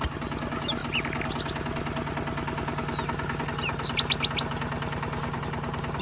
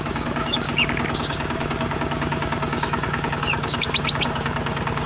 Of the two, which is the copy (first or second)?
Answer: second